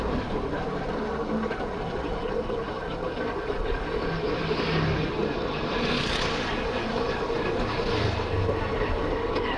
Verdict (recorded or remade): recorded